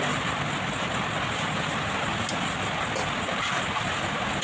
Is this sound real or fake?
real